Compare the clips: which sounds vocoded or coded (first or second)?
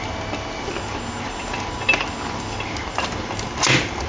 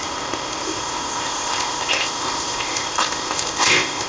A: second